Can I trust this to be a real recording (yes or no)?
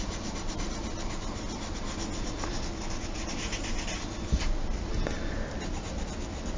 yes